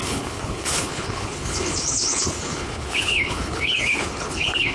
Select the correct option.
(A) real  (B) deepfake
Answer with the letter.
B